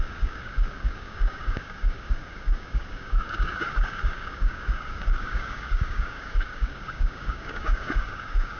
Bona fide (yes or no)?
no